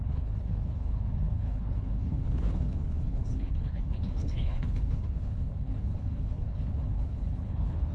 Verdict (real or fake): fake